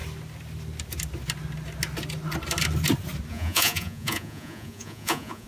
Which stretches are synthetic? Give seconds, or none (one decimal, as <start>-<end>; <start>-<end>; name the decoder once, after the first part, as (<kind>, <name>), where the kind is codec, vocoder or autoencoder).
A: 3.3-5.5 (vocoder, Vocos)